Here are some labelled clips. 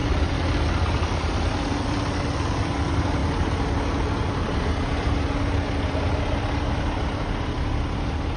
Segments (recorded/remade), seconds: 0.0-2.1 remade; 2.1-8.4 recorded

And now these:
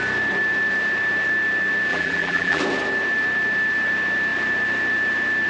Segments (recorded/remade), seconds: 0.0-1.9 recorded; 1.9-2.6 remade; 2.6-5.5 recorded

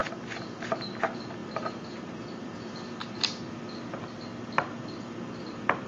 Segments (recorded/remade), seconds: 0.0-0.6 remade; 0.6-1.4 recorded; 1.4-2.5 remade; 2.5-5.9 recorded

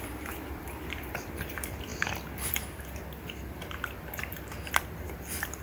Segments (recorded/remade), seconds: 0.0-1.9 remade; 1.9-4.7 recorded; 4.7-5.6 remade

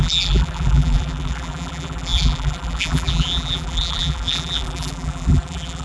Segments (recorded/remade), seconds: 0.0-5.8 remade

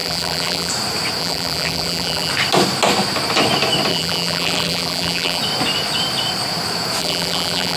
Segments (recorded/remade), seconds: 0.0-0.7 remade; 0.7-1.2 recorded; 1.2-2.3 remade; 2.3-3.9 recorded; 3.9-5.4 remade; 5.4-7.0 recorded; 7.0-7.8 remade

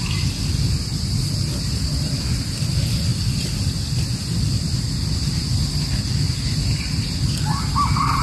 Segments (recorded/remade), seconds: 0.0-8.2 recorded

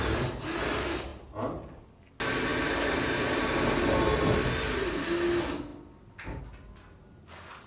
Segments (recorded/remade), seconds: 0.0-7.7 recorded